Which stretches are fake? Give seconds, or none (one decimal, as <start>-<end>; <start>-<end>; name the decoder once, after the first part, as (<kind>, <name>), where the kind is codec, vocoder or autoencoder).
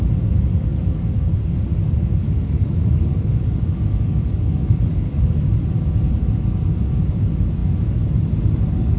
0.7-1.3 (codec, DAC); 2.2-5.2